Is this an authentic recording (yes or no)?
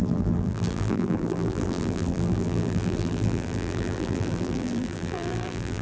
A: no